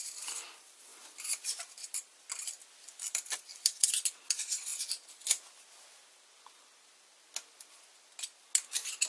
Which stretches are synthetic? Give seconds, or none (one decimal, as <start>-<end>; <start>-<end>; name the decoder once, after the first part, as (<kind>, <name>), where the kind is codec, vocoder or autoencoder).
0.0-4.7 (vocoder, BigVGAN v2); 8.7-9.1